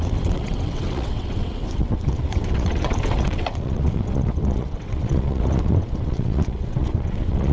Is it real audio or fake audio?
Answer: fake